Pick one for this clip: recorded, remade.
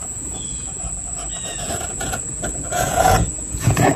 remade